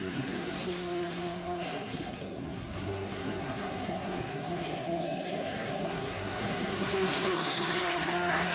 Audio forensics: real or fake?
fake